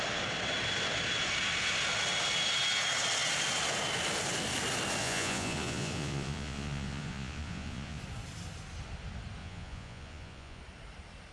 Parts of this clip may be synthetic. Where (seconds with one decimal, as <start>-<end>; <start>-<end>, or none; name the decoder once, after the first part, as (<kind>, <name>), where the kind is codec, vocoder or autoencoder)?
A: 5.0-8.0 (vocoder, Vocos); 9.4-10.6